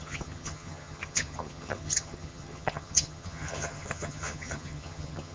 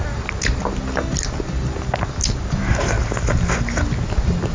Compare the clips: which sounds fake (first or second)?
first